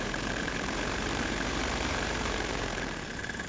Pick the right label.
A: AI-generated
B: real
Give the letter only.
A